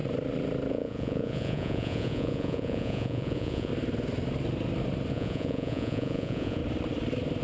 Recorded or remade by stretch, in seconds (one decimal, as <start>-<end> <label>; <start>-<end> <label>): 0.0-0.7 recorded; 0.7-3.7 remade; 3.7-5.1 recorded; 5.1-6.6 remade; 6.6-7.4 recorded